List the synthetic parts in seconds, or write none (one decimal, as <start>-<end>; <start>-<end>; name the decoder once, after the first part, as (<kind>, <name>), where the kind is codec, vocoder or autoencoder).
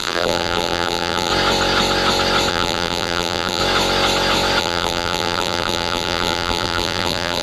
0.0-1.3 (vocoder, BigVGAN v2); 2.5-3.6; 4.6-7.4